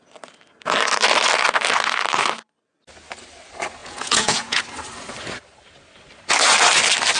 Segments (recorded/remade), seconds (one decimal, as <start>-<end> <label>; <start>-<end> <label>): 0.0-3.8 recorded; 3.8-4.6 remade; 4.6-7.2 recorded